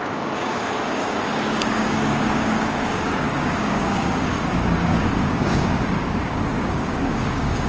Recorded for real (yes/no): no